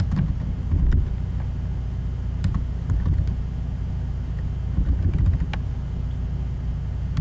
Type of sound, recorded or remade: recorded